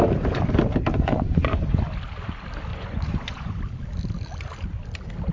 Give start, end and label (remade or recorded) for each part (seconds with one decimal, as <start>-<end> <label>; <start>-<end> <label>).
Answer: 0.0-0.9 recorded; 0.9-1.8 remade; 1.8-2.7 recorded; 2.7-3.6 remade; 3.6-5.3 recorded